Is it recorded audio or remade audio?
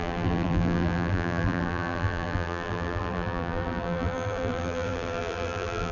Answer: remade